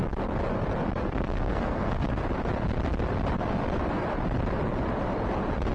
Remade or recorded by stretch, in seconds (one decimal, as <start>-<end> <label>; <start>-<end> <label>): 0.0-1.0 recorded; 1.0-2.2 remade; 2.2-5.7 recorded